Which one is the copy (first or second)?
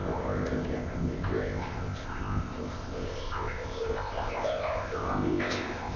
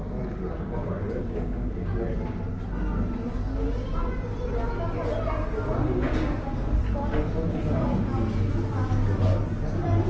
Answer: first